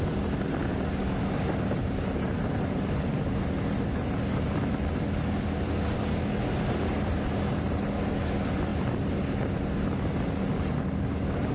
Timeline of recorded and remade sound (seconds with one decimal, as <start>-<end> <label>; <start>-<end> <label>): 0.0-11.5 recorded